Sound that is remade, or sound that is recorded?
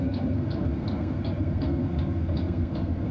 remade